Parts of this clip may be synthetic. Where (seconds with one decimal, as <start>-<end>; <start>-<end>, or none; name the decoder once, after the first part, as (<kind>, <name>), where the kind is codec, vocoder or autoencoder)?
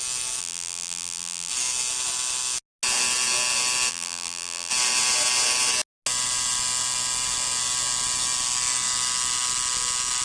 0.4-1.5 (vocoder, BigVGAN v2); 3.9-4.7